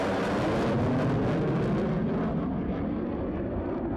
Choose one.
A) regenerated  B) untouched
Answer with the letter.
B